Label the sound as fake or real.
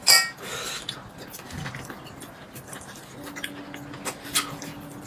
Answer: real